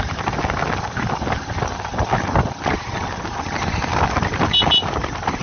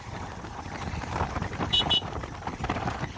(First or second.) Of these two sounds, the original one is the first